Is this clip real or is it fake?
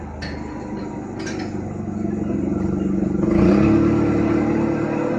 real